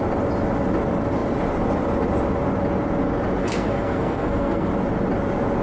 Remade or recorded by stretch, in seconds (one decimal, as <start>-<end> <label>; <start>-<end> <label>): 0.0-3.4 recorded; 3.4-4.7 remade; 4.7-5.6 recorded